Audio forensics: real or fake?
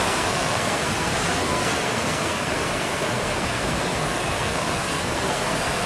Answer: fake